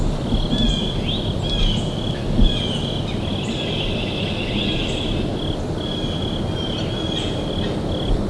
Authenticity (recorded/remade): recorded